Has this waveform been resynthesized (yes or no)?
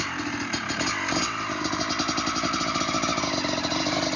no